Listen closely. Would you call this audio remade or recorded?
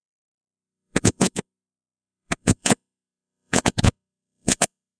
remade